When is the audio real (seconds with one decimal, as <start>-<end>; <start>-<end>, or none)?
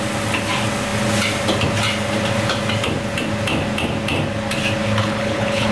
0.0-5.0